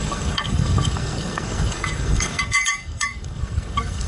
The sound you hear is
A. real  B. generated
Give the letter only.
B